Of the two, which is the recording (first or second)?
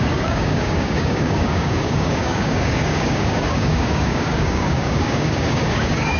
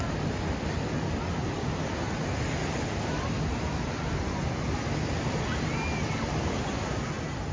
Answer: second